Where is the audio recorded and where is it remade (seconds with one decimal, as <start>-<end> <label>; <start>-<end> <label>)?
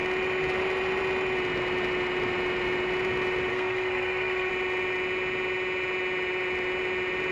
0.0-3.5 recorded; 3.5-4.5 remade; 4.5-7.3 recorded